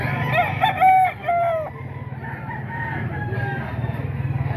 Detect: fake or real real